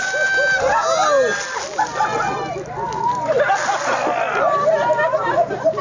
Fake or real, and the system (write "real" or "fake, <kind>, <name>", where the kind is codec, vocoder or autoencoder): real